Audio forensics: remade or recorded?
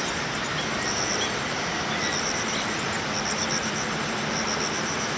recorded